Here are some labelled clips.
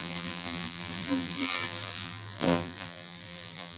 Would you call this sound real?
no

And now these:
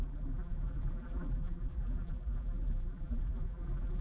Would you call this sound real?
no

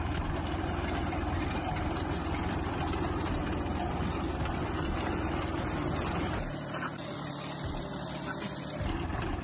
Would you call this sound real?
no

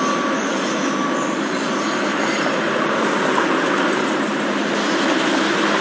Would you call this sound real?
no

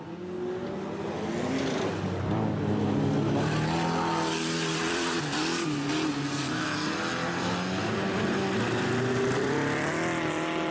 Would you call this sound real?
yes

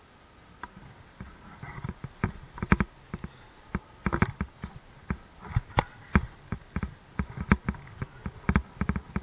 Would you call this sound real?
yes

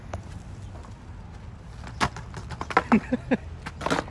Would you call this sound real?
yes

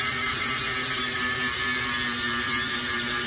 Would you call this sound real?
no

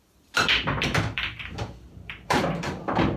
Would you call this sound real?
no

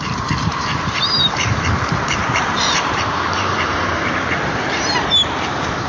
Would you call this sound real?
no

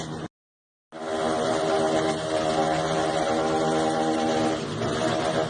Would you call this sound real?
yes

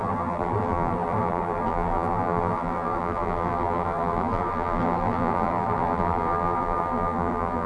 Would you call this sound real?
no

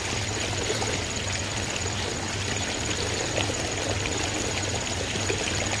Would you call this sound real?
yes